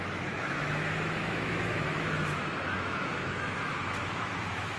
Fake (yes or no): yes